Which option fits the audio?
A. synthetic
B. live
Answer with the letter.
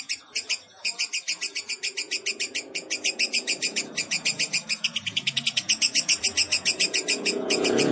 A